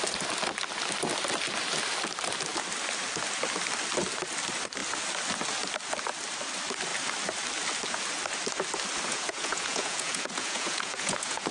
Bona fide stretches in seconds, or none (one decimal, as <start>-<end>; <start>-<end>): 0.0-9.1